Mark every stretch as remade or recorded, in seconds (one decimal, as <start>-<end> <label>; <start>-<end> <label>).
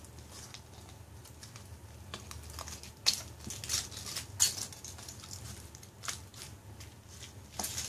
0.0-7.9 recorded